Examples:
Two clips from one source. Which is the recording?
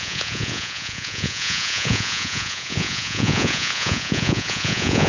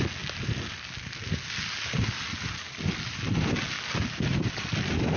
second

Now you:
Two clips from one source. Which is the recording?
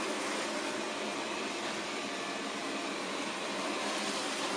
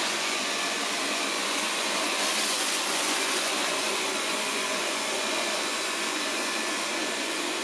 first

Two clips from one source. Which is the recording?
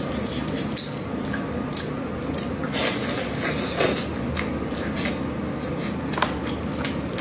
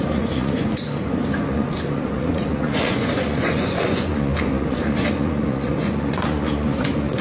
first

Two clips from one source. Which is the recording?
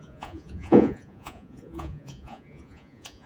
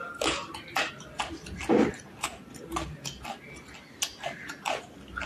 second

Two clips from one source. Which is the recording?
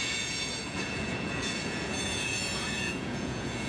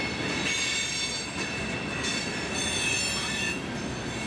second